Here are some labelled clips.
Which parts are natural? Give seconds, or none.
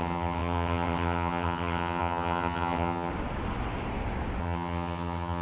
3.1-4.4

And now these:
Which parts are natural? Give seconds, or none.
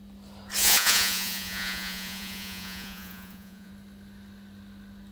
0.0-0.6; 3.7-5.1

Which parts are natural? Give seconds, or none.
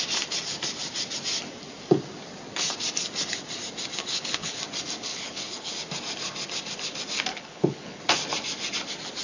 0.0-4.0; 4.6-5.1; 5.7-7.3; 8.0-9.2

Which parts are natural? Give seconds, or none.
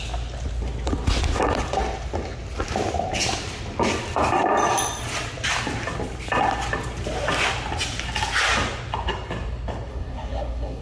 0.0-9.9